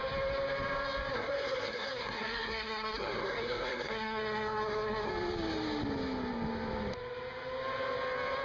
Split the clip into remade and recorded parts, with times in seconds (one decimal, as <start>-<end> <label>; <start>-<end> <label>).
0.0-1.1 recorded; 1.1-5.1 remade; 5.1-8.4 recorded